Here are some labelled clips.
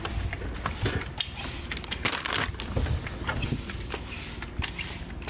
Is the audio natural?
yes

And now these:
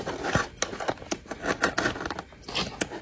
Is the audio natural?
yes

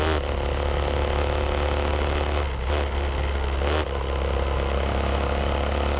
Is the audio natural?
yes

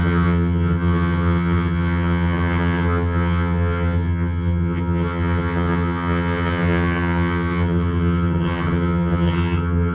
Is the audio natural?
no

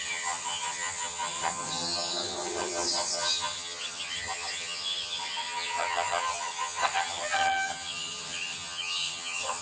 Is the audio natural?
no